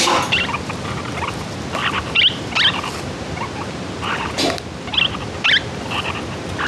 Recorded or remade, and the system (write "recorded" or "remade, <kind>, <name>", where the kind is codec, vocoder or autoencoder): recorded